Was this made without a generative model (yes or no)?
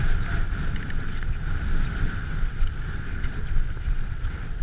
yes